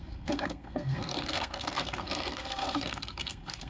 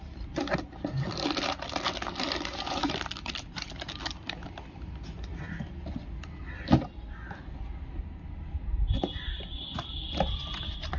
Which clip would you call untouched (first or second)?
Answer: second